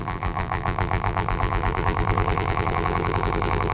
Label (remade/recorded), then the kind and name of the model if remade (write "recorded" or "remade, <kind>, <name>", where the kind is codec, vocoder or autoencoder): remade, vocoder, BigVGAN v2